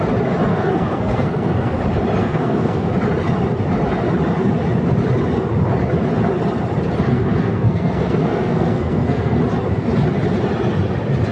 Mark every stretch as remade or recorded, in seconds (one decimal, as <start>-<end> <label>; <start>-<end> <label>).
0.0-0.5 recorded; 0.5-1.8 remade; 1.8-2.2 recorded; 2.2-2.9 remade; 2.9-7.0 recorded; 7.0-9.4 remade; 9.4-11.3 recorded